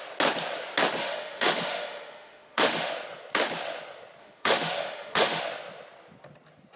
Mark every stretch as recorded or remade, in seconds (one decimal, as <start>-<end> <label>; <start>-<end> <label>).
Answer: 0.0-1.0 recorded; 1.0-2.9 remade; 2.9-4.2 recorded; 4.2-5.4 remade; 5.4-6.8 recorded